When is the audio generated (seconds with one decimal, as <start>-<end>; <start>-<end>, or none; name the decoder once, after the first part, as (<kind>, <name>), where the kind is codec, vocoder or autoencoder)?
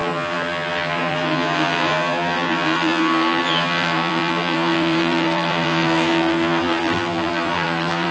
0.0-8.1 (vocoder, BigVGAN v2)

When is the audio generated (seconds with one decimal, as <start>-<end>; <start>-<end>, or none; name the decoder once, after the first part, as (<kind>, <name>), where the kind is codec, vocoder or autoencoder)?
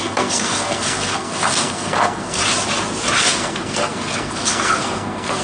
0.0-2.4 (codec, SNAC); 3.2-5.4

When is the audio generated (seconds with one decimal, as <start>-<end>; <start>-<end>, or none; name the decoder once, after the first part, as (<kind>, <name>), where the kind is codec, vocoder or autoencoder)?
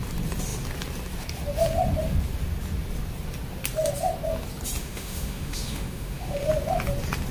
4.8-6.5 (autoencoder, DAC-VAE)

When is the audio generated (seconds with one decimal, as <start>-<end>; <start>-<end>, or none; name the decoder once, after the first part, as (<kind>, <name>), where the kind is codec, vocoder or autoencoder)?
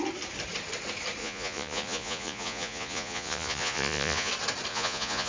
1.2-4.3 (vocoder, Vocos); 4.7-5.3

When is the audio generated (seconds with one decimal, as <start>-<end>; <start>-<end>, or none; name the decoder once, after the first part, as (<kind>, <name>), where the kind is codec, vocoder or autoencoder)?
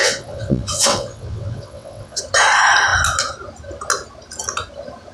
0.0-2.2 (vocoder, WaveNeXt)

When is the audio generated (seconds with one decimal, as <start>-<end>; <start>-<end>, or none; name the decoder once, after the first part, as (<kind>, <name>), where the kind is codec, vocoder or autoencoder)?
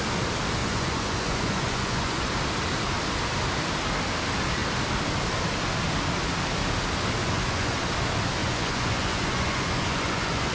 0.6-2.3 (vocoder, Vocos); 7.2-7.8; 8.4-10.5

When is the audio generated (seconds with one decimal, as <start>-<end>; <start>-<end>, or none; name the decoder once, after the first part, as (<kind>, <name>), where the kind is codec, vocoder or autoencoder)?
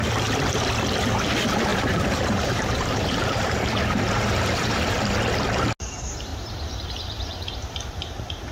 1.7-4.8 (vocoder, BigVGAN v2); 6.3-8.5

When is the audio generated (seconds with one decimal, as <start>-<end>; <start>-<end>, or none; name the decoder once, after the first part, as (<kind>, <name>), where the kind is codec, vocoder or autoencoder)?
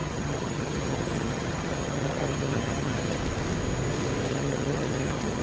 0.0-3.2 (vocoder, HiFi-GAN); 4.3-5.4